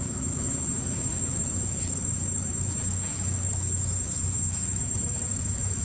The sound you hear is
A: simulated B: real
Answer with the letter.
A